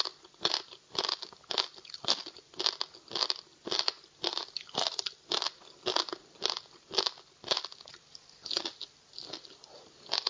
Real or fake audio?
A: real